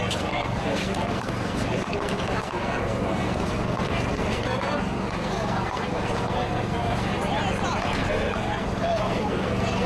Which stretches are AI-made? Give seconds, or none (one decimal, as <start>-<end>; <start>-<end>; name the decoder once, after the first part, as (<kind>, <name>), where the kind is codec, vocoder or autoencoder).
0.0-7.1 (codec, SNAC); 7.8-9.9